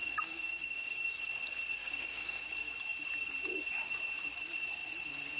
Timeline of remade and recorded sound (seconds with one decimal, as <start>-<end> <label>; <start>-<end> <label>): 0.0-1.3 remade; 1.3-1.8 recorded; 1.8-2.4 remade; 2.4-5.4 recorded